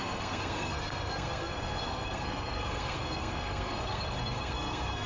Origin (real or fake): fake